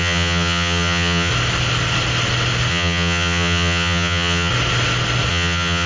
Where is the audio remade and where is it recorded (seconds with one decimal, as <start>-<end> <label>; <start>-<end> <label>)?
0.0-1.3 remade; 1.3-2.7 recorded; 2.7-4.5 remade; 4.5-5.3 recorded; 5.3-5.9 remade